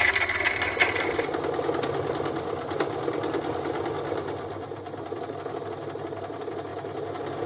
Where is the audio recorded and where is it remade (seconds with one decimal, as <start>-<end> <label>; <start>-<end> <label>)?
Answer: 0.0-7.5 recorded